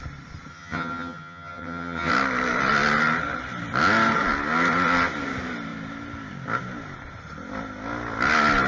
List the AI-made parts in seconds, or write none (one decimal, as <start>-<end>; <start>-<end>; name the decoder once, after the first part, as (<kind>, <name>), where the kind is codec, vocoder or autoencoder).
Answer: 0.5-2.1 (vocoder, HiFi-GAN)

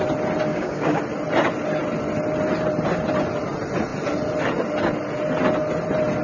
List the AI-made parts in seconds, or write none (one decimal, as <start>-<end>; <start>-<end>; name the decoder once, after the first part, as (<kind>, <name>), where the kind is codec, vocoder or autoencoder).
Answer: 0.5-1.0 (codec, DAC)

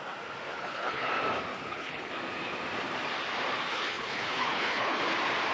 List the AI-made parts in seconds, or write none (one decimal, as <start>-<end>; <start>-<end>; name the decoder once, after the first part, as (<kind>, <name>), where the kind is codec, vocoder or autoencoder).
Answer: 0.5-1.1 (codec, HILCodec); 1.5-2.1; 3.7-5.0

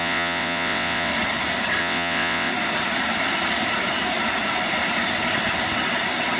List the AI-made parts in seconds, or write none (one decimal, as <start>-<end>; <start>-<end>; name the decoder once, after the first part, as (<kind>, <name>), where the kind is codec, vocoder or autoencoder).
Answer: 0.0-1.1 (vocoder, WaveNeXt); 1.8-2.5

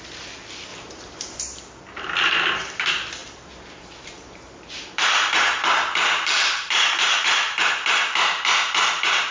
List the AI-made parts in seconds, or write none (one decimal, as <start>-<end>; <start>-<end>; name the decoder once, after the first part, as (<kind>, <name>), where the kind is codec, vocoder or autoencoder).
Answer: 0.7-1.4 (vocoder, BigVGAN v2); 3.2-7.7